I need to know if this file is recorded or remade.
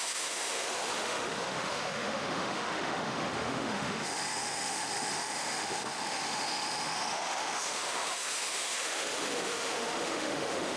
remade